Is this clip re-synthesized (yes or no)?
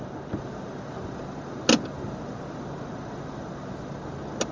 no